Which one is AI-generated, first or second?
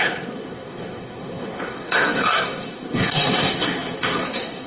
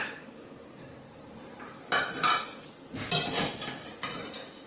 first